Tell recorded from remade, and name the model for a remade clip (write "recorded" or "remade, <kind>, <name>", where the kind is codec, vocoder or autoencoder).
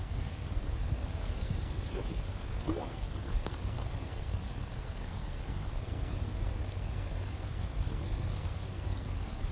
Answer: remade, codec, SNAC